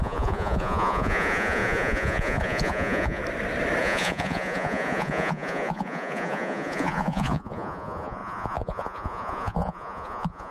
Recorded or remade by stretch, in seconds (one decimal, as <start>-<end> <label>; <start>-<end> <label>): 0.0-3.2 remade; 3.2-3.8 recorded; 3.8-10.5 remade